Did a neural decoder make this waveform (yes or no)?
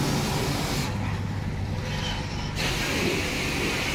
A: no